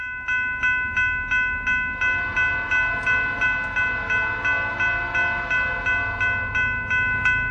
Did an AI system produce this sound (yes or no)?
no